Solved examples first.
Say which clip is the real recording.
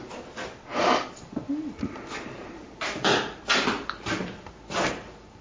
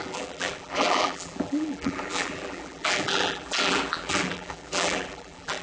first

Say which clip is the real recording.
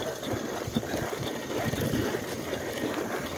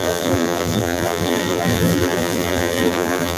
first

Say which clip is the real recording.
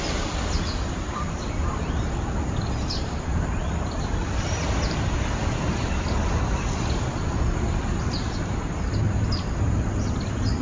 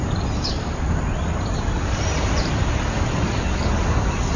second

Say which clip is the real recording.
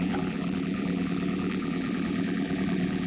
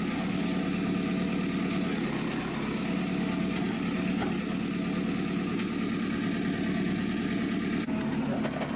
second